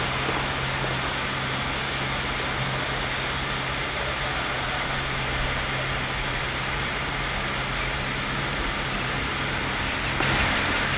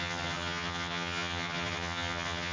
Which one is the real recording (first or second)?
first